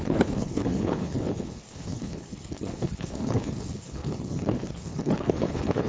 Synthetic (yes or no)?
yes